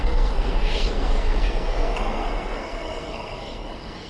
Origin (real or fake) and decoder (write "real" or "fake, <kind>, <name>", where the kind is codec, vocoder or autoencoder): fake, codec, SNAC